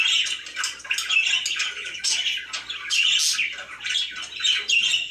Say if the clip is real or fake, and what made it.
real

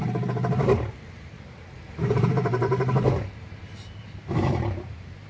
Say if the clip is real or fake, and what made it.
fake, vocoder, BigVGAN v2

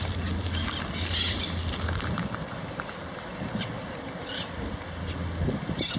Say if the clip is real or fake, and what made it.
real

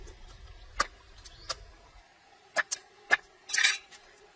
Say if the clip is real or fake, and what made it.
real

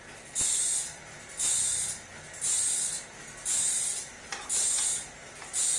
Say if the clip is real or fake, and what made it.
real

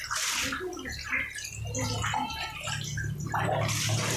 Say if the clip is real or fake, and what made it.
real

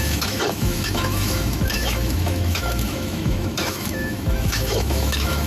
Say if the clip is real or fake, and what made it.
fake, autoencoder, DAC-VAE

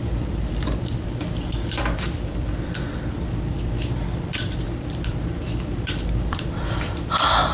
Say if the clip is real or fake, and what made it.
fake, vocoder, BigVGAN v2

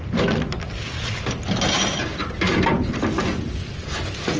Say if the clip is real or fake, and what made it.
real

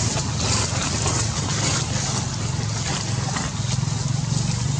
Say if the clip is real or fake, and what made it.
real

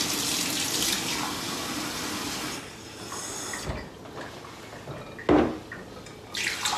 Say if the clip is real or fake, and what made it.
real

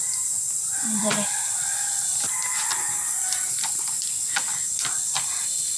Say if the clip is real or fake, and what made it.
fake, vocoder, BigVGAN v2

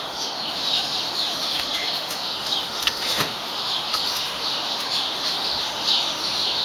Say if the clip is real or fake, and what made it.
fake, autoencoder, DAC-VAE